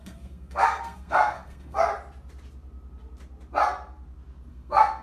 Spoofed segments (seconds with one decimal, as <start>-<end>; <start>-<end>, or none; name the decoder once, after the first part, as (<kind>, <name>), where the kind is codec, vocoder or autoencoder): 0.0-1.9 (codec, SNAC); 4.5-5.0